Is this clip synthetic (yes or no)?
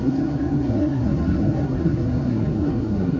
yes